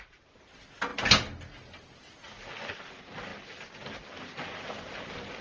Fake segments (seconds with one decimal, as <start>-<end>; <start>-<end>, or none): none